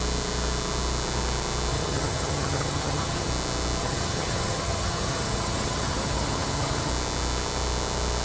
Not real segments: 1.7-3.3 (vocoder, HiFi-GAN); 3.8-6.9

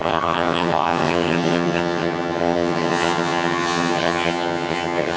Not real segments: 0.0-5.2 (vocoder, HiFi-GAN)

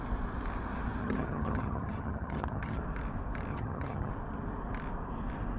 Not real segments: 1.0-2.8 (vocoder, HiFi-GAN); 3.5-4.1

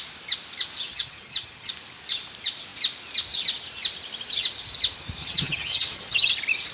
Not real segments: 0.9-1.7 (vocoder, HiFi-GAN); 5.2-6.3

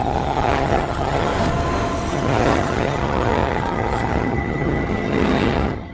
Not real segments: 0.0-1.3 (vocoder, HiFi-GAN); 2.1-5.9

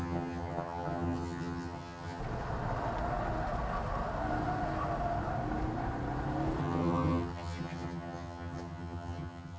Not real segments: 0.0-2.2 (vocoder, HiFi-GAN); 6.6-9.6